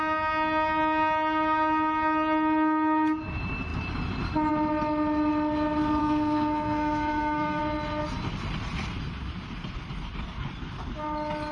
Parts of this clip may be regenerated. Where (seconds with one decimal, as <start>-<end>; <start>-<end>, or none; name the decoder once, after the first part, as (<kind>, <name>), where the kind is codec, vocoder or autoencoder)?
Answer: 6.0-7.6 (codec, SNAC)